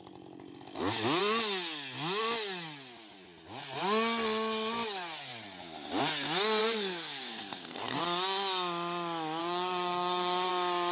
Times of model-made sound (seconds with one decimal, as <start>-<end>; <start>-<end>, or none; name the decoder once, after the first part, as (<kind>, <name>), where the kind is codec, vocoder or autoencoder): 6.6-8.0 (codec, SNAC); 9.4-10.5